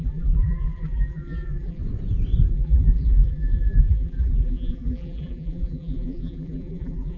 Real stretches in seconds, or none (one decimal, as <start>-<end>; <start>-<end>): 1.8-2.5